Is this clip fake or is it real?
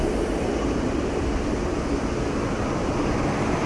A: real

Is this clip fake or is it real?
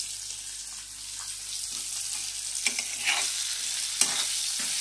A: real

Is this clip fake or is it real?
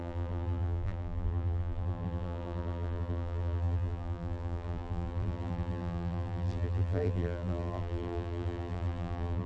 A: fake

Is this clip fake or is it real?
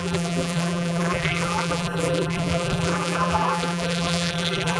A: fake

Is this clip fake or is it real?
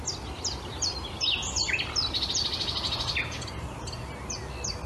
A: real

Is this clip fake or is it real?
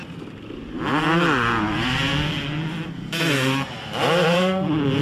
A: real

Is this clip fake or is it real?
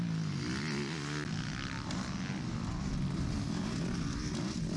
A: real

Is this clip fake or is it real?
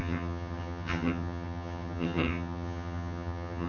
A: fake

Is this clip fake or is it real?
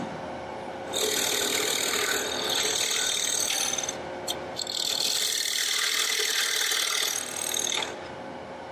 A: real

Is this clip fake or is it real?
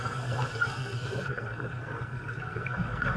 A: fake